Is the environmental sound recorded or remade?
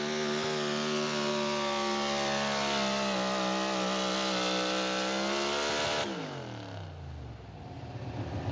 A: recorded